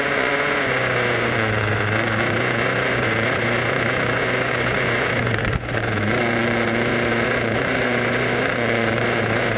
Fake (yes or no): yes